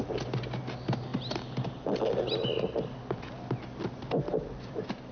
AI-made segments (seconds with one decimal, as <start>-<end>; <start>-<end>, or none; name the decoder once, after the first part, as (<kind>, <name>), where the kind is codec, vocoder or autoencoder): none